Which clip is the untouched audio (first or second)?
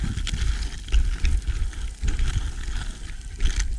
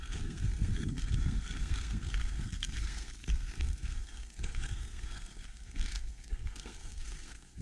first